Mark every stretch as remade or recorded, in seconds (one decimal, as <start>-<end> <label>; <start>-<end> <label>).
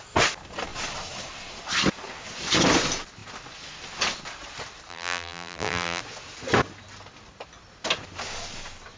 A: 0.0-4.9 recorded; 4.9-6.0 remade; 6.0-9.0 recorded